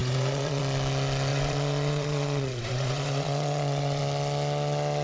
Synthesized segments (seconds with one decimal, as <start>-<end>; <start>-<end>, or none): 0.0-0.6; 1.3-4.0